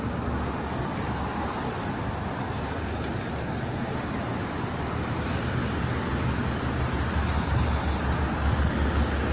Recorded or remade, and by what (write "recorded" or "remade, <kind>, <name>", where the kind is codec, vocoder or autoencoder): recorded